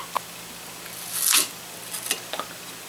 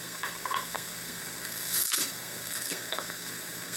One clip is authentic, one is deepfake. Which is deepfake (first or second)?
second